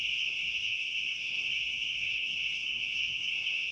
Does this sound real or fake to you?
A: fake